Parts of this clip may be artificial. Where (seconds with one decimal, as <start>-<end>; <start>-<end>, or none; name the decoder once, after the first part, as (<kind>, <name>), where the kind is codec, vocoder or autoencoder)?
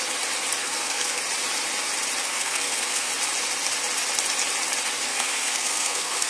0.6-1.2 (codec, SNAC); 2.3-3.1; 5.1-6.3